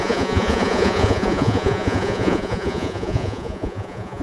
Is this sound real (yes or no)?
no